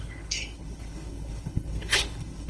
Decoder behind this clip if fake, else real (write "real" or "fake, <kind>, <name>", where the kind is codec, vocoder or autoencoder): fake, codec, HILCodec